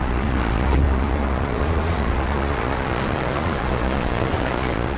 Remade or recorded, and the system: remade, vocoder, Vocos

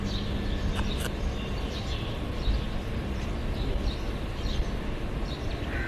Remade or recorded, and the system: recorded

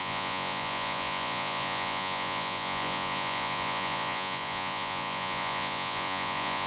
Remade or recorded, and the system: remade, vocoder, Vocos